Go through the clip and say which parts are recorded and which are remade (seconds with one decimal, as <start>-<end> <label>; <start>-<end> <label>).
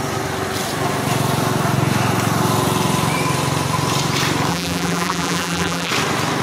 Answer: 0.0-4.5 recorded; 4.5-5.9 remade; 5.9-6.4 recorded